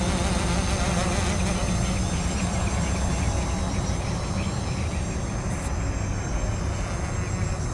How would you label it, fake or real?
real